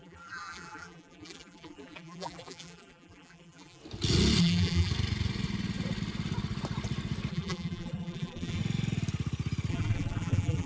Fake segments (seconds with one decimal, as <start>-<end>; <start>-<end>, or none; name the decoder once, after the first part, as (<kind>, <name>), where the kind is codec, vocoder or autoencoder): 0.0-3.8 (vocoder, BigVGAN v2); 4.4-4.9; 7.3-8.6; 9.7-10.7